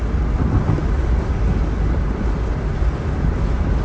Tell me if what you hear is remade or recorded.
recorded